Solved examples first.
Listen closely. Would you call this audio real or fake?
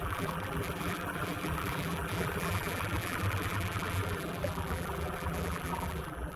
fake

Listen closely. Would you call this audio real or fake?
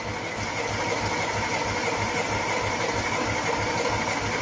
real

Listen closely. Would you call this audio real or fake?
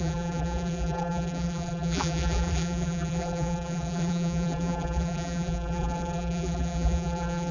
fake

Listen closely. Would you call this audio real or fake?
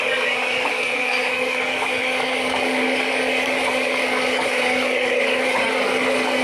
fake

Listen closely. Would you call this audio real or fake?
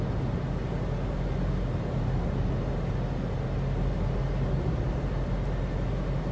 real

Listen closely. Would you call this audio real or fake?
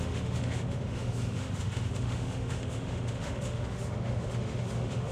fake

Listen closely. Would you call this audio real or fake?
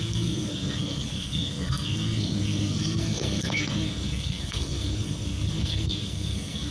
fake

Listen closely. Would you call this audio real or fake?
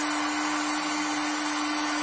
real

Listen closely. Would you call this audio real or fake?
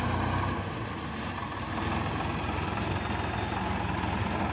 real